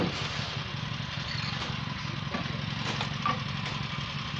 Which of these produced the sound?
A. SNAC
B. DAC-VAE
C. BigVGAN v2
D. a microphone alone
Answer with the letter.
D